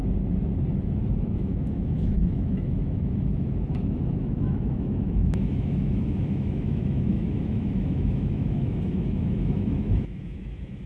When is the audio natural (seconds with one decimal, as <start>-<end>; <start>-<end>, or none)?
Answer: 0.0-1.1